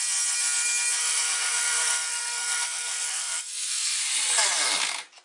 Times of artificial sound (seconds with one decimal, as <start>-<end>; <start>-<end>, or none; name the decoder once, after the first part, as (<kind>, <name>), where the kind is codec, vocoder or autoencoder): 1.0-4.0 (codec, SNAC)